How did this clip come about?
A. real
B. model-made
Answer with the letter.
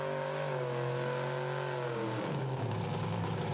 B